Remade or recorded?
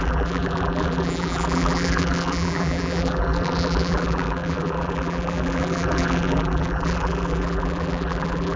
remade